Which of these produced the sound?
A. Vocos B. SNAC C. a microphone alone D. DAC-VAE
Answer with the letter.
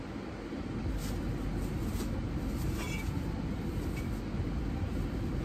C